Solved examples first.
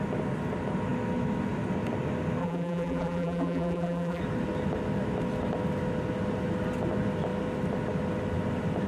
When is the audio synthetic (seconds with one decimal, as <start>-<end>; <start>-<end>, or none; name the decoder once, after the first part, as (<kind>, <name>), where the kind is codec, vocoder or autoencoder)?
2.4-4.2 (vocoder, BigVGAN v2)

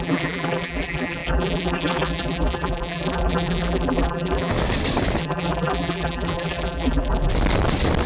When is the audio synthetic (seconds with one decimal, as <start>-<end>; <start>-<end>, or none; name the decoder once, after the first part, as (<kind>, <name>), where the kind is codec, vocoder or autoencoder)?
0.0-4.5 (vocoder, BigVGAN v2); 5.2-7.3

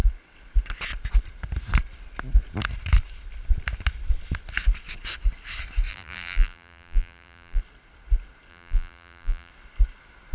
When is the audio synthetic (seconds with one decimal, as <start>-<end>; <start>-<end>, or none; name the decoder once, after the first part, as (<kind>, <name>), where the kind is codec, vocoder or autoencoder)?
5.9-7.6 (vocoder, BigVGAN v2); 8.5-9.5